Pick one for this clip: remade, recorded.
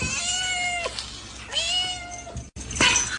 recorded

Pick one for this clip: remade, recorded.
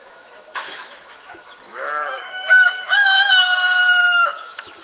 remade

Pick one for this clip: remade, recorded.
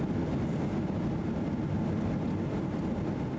recorded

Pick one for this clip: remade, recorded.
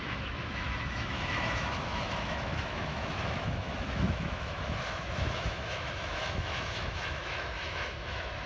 remade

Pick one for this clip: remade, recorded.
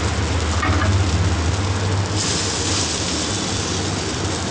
recorded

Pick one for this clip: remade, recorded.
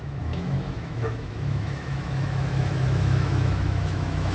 remade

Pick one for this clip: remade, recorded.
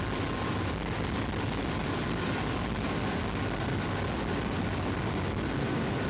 recorded